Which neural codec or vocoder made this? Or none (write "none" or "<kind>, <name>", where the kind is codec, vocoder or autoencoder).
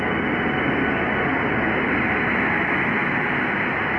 none